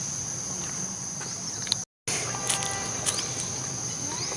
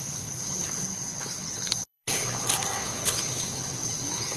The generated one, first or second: second